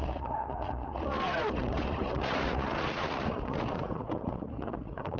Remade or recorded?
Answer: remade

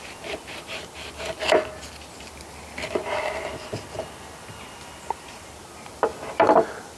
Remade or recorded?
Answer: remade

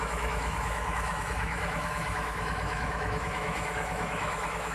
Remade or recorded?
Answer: remade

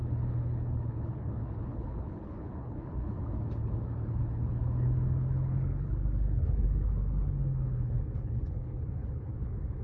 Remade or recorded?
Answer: remade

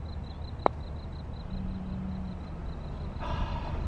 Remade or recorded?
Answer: recorded